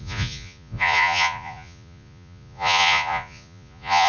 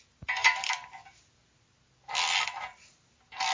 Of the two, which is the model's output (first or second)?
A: first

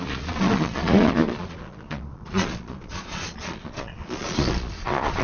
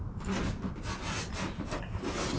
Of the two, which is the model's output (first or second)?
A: first